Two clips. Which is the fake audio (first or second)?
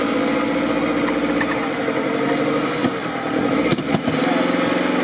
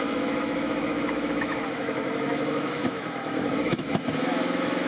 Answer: second